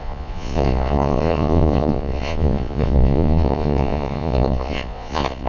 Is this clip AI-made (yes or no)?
yes